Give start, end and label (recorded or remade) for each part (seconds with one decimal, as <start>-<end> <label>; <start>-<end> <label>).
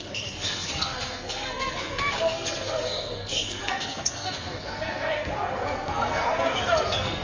0.0-7.2 remade